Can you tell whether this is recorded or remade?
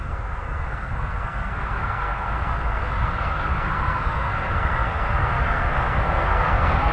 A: remade